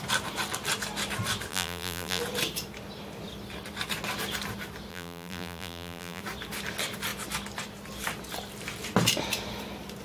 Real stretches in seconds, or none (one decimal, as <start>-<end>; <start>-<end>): 0.0-1.5; 2.2-4.9; 6.2-10.0